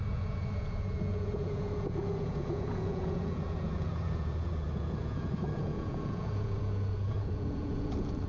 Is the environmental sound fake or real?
fake